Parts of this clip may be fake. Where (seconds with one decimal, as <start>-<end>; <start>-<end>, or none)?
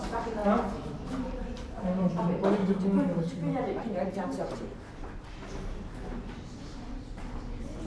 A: 0.0-2.6; 3.8-7.9